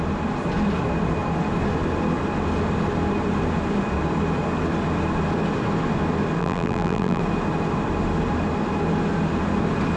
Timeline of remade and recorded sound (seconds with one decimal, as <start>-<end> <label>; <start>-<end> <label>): 0.0-6.4 recorded; 6.4-7.2 remade; 7.2-10.0 recorded